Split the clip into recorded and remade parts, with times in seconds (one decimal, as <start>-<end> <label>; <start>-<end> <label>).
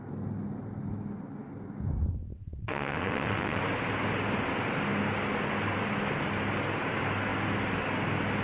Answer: 0.0-2.3 recorded; 2.3-3.6 remade; 3.6-8.4 recorded